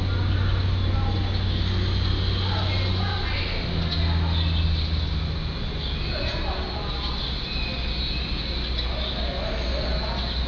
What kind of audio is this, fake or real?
real